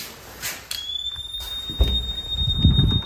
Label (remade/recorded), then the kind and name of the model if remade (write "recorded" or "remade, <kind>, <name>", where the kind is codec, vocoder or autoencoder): recorded